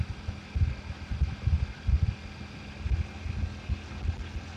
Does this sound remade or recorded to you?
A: recorded